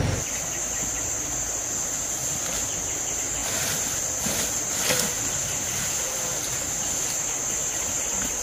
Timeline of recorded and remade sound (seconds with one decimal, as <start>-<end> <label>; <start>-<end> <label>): 0.0-8.4 recorded